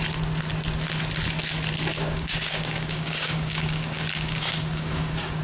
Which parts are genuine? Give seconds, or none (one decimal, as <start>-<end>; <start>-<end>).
0.0-1.9

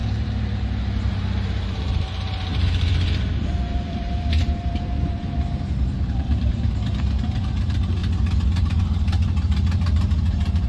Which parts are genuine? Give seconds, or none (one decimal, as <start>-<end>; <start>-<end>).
8.0-8.5

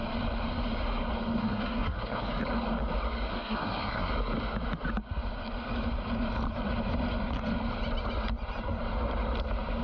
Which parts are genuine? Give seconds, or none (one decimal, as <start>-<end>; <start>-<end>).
0.0-1.4; 2.3-3.3; 4.1-9.8

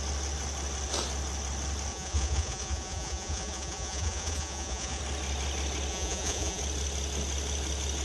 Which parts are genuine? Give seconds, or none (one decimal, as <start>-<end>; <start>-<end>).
0.0-1.9; 5.0-5.9; 6.6-8.0

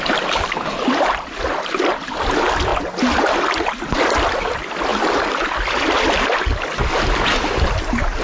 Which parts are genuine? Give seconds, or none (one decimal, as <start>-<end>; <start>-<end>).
2.7-3.5; 4.9-8.2

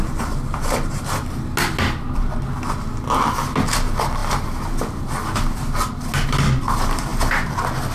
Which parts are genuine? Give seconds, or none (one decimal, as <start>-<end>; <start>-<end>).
0.0-7.9